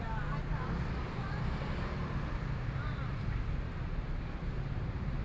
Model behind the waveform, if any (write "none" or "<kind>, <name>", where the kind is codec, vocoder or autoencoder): none